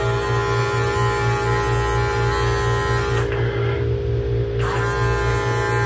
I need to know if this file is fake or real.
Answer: real